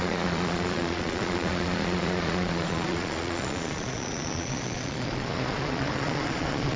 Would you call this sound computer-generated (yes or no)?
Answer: yes